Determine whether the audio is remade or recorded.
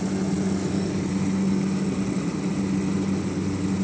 recorded